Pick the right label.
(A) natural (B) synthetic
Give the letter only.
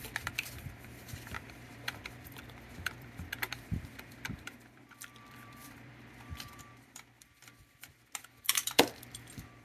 B